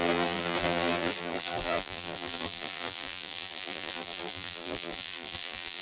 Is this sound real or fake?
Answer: fake